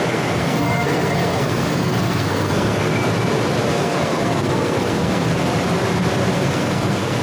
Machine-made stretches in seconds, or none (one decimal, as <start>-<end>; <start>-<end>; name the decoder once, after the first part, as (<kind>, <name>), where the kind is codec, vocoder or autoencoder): 0.0-3.0 (codec, SNAC); 3.7-5.5; 6.3-7.2